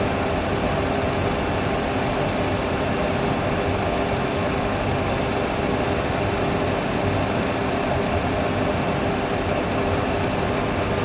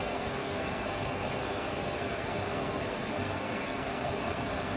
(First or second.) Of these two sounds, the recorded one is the first